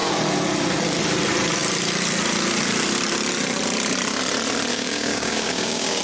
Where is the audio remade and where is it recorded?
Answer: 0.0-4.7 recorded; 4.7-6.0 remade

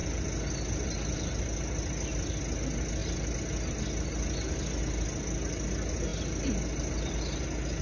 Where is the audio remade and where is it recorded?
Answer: 0.0-7.8 recorded

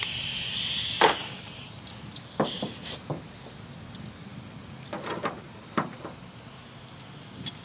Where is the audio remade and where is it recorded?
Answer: 0.0-7.6 recorded

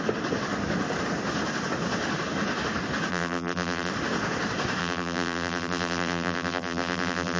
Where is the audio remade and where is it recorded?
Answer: 0.0-3.1 recorded; 3.1-3.9 remade; 3.9-4.8 recorded; 4.8-7.4 remade

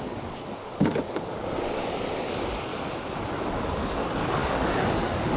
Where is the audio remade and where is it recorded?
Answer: 0.0-2.7 remade; 2.7-3.8 recorded; 3.8-5.4 remade

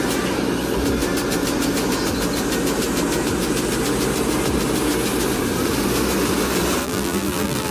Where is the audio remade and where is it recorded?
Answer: 0.0-6.8 recorded; 6.8-7.7 remade